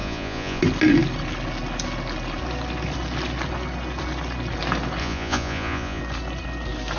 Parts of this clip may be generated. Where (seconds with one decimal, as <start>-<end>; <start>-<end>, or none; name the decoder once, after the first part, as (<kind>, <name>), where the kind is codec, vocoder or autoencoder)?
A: 0.0-0.6 (vocoder, Vocos); 5.0-6.0